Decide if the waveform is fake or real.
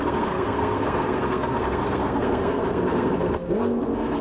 fake